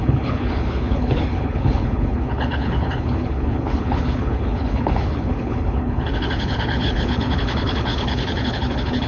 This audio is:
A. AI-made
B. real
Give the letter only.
A